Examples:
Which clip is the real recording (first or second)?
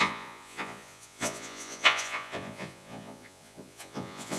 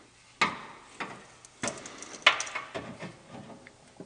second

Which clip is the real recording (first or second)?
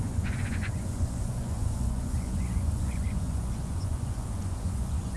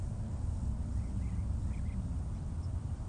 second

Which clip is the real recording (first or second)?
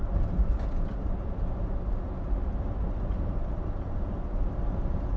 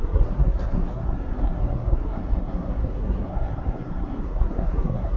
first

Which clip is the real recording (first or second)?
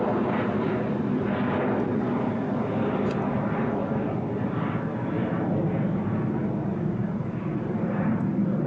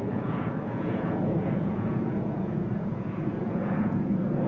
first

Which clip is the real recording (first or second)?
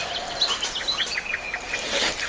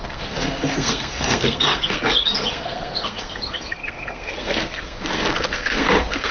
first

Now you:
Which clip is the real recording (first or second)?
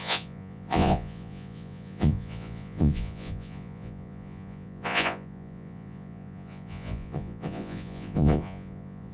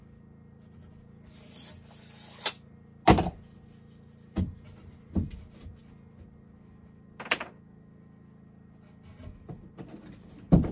second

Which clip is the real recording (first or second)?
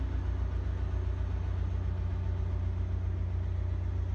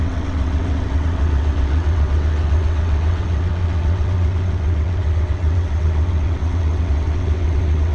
first